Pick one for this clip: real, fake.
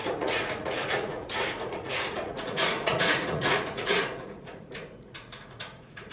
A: fake